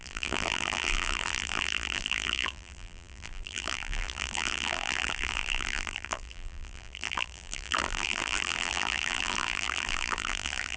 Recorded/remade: remade